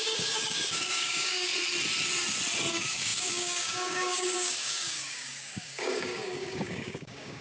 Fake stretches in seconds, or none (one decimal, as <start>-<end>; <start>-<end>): 0.0-1.5; 2.7-7.4